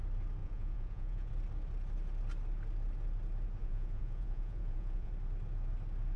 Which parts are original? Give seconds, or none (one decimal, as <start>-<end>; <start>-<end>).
0.0-0.4; 1.3-3.6; 5.1-6.2